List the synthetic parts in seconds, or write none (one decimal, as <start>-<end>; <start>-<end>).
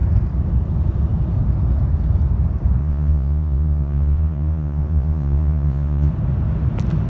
2.8-6.1